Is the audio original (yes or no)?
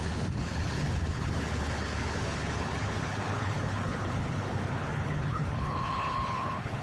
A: no